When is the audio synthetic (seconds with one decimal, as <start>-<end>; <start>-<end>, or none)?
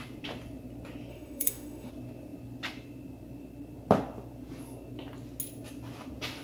1.1-1.9